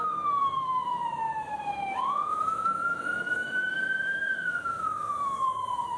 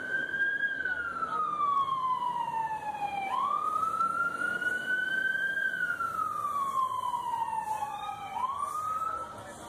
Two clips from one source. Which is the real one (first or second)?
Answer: second